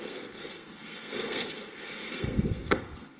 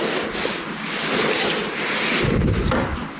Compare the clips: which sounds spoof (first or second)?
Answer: first